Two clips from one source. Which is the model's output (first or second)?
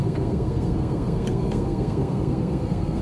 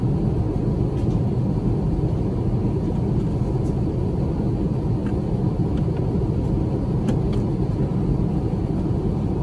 first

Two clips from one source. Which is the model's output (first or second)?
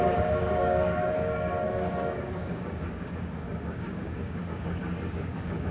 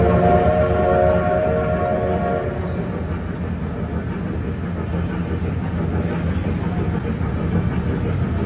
first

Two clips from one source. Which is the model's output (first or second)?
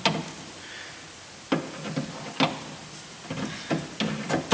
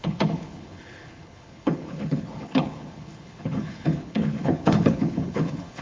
second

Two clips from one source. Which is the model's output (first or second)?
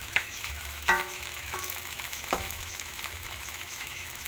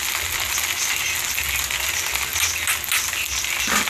first